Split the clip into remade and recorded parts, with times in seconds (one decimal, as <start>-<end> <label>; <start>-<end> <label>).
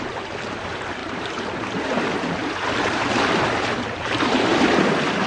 0.0-4.5 remade; 4.5-5.3 recorded